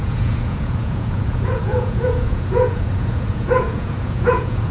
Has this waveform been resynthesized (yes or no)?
yes